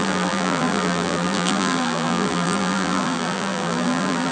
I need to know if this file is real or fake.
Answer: fake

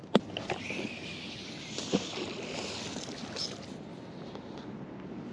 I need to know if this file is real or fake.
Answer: real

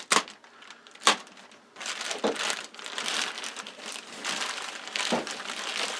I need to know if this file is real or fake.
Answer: real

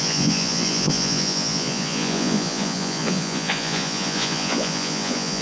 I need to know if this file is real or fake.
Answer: fake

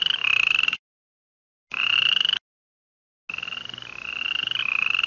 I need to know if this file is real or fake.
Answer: real